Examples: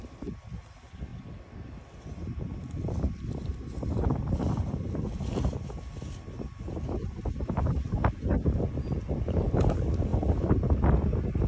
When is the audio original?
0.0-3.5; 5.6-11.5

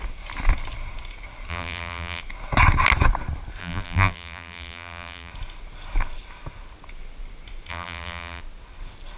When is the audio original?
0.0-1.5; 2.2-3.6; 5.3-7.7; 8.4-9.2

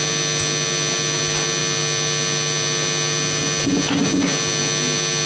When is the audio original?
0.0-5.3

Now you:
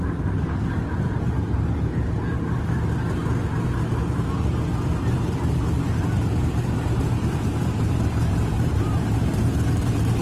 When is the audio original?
2.2-7.0

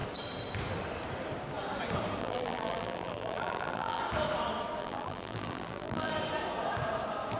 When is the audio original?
0.0-2.2; 4.0-4.8; 6.1-7.4

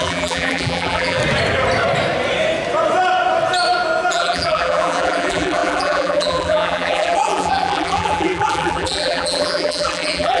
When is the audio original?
1.2-4.1

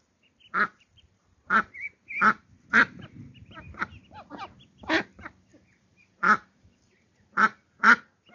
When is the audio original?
0.0-0.7; 1.9-5.5; 7.8-8.3